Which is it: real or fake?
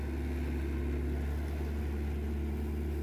real